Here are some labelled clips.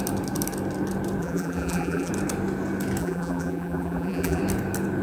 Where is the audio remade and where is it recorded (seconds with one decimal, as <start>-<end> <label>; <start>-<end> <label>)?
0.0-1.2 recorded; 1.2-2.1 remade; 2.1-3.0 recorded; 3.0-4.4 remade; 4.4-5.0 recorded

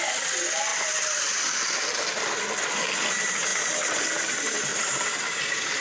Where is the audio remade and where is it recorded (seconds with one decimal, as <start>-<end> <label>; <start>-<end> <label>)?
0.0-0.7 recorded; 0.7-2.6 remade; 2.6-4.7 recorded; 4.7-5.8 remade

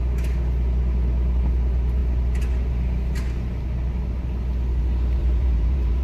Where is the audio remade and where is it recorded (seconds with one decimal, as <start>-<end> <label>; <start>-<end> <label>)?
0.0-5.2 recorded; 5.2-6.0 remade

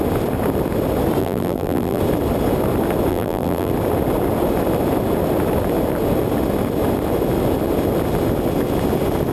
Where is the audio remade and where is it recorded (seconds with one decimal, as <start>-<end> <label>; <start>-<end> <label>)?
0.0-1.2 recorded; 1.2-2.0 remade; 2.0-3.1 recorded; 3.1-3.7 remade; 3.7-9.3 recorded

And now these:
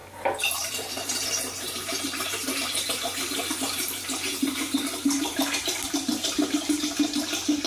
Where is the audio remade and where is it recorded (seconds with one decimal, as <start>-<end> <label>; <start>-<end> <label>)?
0.0-0.5 recorded; 0.5-7.7 remade